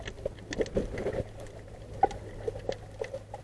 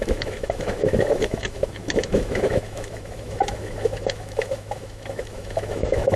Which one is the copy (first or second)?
second